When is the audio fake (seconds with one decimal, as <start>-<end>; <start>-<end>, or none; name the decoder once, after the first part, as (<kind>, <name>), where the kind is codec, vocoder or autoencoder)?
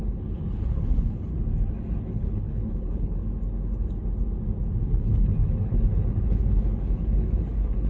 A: 0.0-1.3 (codec, HILCodec); 2.0-3.2; 4.8-7.9